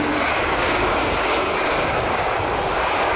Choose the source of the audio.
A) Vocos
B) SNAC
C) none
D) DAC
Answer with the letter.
D